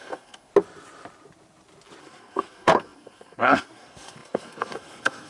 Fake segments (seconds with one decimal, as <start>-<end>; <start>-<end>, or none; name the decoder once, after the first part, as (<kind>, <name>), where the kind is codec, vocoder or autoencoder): 0.0-0.5 (codec, SNAC); 2.0-5.3